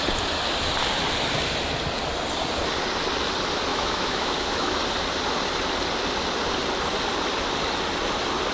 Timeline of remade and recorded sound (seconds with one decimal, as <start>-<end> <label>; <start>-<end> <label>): 0.0-3.7 recorded; 3.7-4.8 remade; 4.8-8.5 recorded

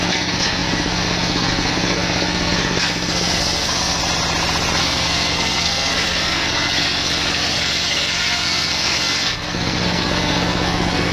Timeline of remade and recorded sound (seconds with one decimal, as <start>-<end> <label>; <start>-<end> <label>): 0.0-4.0 remade; 4.0-4.8 recorded; 4.8-11.1 remade

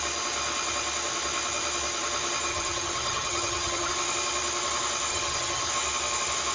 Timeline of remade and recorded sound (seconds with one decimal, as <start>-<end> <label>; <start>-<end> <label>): 0.0-2.5 recorded; 2.5-3.9 remade; 3.9-5.1 recorded; 5.1-5.7 remade; 5.7-6.5 recorded

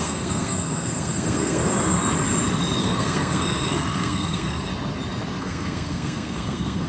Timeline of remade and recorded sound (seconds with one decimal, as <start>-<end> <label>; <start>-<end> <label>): 0.0-1.6 remade; 1.6-2.8 recorded; 2.8-4.7 remade; 4.7-5.4 recorded; 5.4-6.9 remade

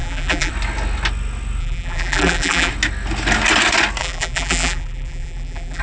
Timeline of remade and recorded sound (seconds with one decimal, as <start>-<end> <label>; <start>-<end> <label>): 0.0-0.5 remade; 0.5-1.6 recorded; 1.6-2.7 remade; 2.7-4.0 recorded; 4.0-5.8 remade

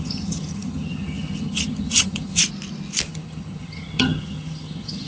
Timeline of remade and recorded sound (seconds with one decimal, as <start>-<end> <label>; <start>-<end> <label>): 0.0-2.4 remade; 2.4-3.1 recorded; 3.1-5.1 remade